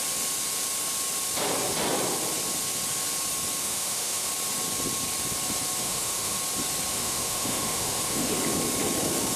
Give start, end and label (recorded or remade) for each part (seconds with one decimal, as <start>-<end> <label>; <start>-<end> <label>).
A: 0.0-3.6 recorded; 3.6-4.3 remade; 4.3-5.8 recorded; 5.8-6.4 remade; 6.4-6.9 recorded; 6.9-8.3 remade; 8.3-9.4 recorded